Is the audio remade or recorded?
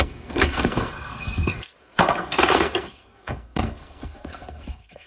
remade